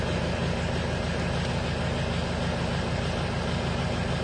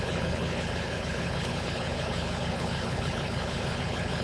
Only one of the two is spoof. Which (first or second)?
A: second